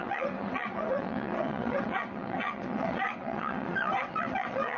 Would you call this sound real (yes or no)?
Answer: no